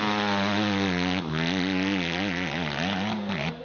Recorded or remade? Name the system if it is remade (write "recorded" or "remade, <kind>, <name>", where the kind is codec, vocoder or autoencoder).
recorded